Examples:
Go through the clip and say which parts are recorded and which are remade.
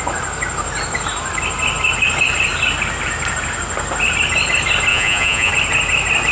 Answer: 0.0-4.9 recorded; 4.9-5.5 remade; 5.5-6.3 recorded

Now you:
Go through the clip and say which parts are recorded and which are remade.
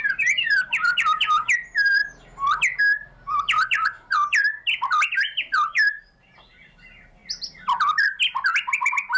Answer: 0.0-2.0 remade; 2.0-2.8 recorded; 2.8-4.4 remade; 4.4-5.1 recorded; 5.1-7.2 remade; 7.2-9.2 recorded